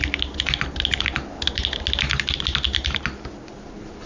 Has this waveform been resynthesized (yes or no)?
no